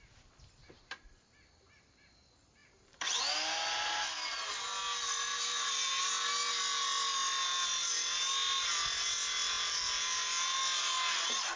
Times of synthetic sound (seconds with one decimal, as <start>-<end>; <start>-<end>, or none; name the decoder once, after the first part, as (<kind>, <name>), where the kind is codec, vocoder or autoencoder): 2.6-3.2 (vocoder, BigVGAN v2); 5.3-5.9